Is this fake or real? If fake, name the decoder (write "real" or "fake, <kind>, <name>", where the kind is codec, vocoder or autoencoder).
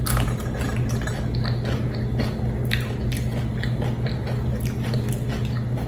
real